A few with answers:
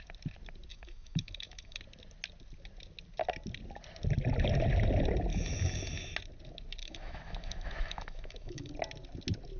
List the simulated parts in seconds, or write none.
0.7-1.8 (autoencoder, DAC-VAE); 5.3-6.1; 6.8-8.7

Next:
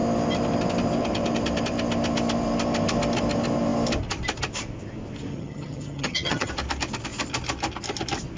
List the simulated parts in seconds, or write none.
5.3-6.5 (vocoder, HiFi-GAN)

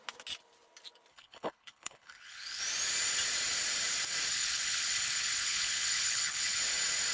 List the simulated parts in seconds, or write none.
1.1-2.6 (codec, HILCodec); 4.3-6.6